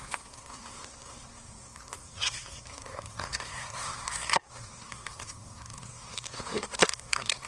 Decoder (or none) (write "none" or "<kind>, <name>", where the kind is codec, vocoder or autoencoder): codec, SNAC